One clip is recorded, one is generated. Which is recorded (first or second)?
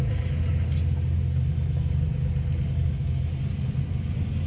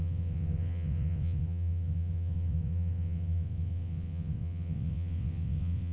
first